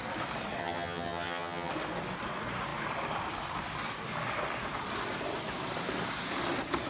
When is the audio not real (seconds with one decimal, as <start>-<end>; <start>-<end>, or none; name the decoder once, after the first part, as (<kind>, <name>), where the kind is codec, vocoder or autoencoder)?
0.6-1.7 (vocoder, HiFi-GAN)